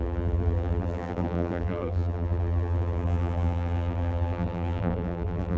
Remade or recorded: remade